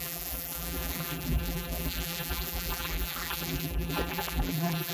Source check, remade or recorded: remade